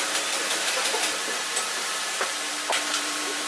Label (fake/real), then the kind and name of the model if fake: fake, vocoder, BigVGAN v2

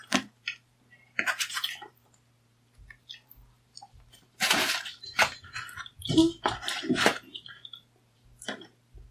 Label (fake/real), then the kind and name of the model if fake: fake, vocoder, BigVGAN v2